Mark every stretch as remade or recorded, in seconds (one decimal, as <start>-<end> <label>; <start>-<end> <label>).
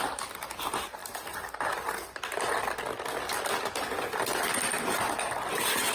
0.0-5.9 recorded